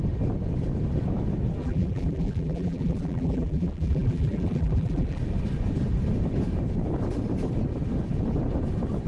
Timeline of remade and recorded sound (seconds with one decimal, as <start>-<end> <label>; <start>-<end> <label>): 0.0-1.6 recorded; 1.6-5.2 remade; 5.2-9.1 recorded